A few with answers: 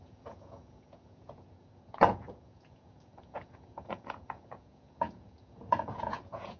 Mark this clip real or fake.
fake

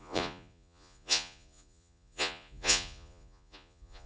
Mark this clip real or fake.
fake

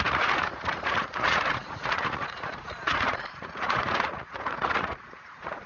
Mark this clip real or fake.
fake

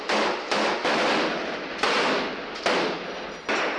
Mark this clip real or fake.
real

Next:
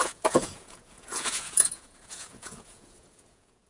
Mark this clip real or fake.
fake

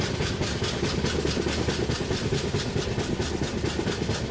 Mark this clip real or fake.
real